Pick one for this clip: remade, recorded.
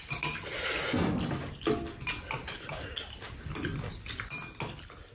recorded